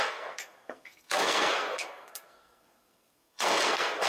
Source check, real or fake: fake